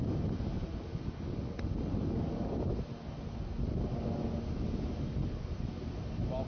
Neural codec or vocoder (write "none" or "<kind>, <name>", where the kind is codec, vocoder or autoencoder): none